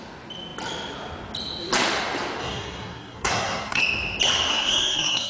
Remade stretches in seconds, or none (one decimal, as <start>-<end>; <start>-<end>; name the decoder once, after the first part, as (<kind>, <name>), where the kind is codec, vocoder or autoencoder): 2.4-3.8 (codec, SNAC); 4.5-5.3